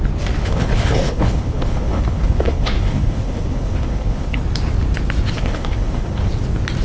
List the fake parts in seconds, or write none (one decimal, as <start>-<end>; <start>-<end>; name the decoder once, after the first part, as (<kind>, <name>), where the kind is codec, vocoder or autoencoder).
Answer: 0.4-4.4 (codec, HILCodec); 5.4-6.3